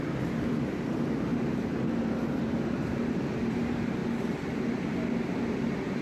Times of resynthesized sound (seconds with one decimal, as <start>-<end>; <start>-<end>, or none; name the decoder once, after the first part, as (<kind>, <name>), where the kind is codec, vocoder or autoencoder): 0.0-4.0 (vocoder, BigVGAN v2); 4.9-6.0